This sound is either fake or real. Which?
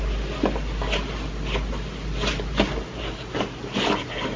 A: real